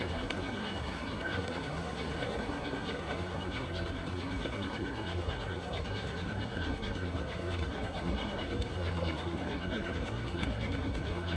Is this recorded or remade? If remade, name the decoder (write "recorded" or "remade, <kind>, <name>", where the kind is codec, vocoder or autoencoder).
remade, codec, SNAC